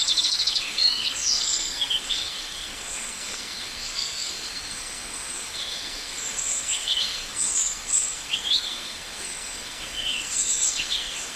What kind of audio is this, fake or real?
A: fake